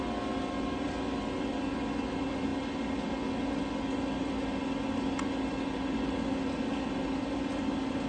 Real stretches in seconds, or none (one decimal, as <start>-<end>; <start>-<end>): 0.0-8.1